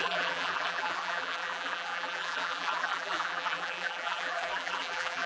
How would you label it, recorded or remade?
remade